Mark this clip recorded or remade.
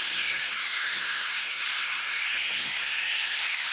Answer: remade